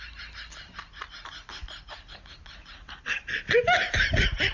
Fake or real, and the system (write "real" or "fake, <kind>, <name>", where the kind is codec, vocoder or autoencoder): real